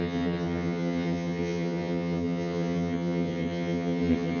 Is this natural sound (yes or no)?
no